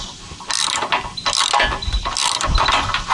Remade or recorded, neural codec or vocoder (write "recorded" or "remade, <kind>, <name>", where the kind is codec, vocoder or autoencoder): recorded